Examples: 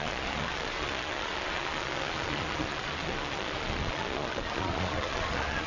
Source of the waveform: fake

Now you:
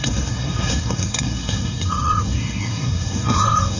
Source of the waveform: fake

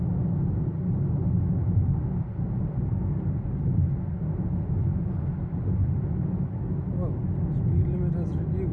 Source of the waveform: real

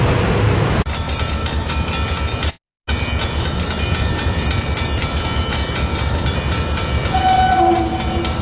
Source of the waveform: real